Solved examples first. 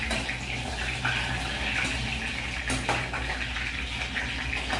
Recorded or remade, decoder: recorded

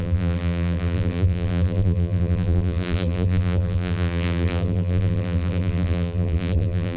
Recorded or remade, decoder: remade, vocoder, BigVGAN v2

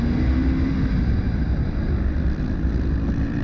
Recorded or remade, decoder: recorded